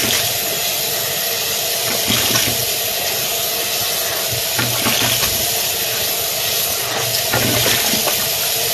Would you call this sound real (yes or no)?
yes